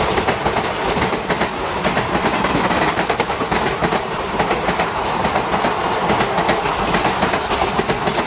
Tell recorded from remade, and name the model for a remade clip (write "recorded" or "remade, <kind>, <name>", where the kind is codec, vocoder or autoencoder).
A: recorded